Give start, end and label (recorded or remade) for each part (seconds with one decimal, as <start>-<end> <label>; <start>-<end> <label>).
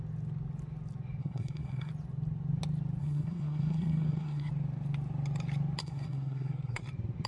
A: 0.0-1.2 recorded; 1.2-1.9 remade; 1.9-3.0 recorded; 3.0-4.5 remade; 4.5-5.8 recorded; 5.8-6.8 remade; 6.8-7.3 recorded